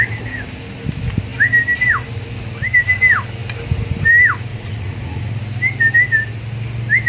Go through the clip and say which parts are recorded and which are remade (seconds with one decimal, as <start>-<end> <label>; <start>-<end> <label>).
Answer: 0.0-4.5 recorded; 4.5-5.4 remade; 5.4-7.1 recorded